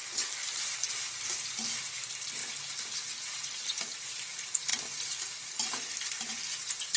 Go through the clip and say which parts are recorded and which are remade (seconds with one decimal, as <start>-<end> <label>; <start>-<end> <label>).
0.0-1.1 recorded; 1.1-2.4 remade; 2.4-4.3 recorded; 4.3-7.0 remade